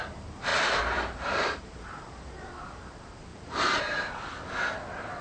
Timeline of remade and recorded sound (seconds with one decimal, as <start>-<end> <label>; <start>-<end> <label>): 0.0-0.5 recorded; 0.5-2.5 remade; 2.5-3.3 recorded; 3.3-3.8 remade; 3.8-5.2 recorded